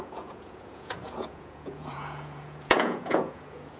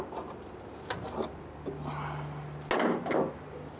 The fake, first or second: first